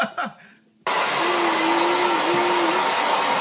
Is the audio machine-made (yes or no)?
no